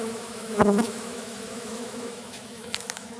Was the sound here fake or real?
fake